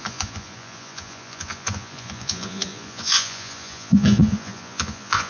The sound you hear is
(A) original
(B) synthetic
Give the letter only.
B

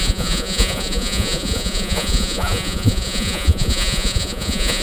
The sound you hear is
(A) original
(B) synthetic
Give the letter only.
B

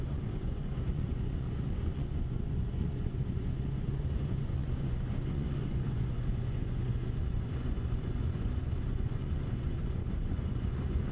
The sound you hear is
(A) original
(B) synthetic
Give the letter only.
B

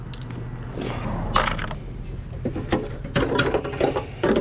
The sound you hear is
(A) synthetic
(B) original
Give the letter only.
B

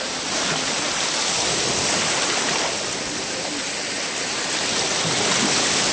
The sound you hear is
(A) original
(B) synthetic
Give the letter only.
A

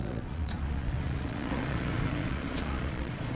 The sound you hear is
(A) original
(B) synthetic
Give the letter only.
B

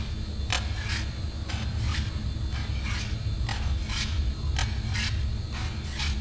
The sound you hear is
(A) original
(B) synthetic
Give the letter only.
A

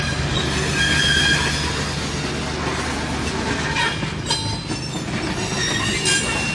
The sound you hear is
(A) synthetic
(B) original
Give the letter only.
B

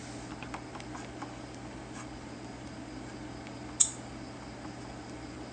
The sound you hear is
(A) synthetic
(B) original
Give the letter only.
B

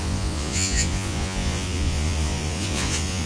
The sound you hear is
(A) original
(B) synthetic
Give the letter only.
B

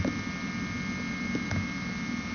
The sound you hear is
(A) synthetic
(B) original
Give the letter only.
B